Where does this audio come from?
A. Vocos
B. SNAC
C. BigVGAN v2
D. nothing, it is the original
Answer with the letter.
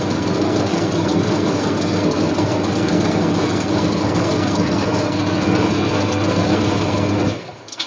B